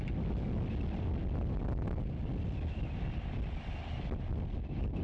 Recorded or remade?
recorded